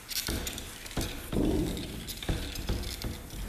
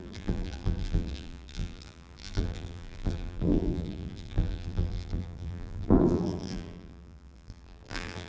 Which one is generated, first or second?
second